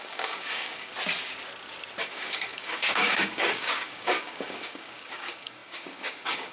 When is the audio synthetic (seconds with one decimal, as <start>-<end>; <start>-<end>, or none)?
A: 0.0-0.9; 2.0-6.5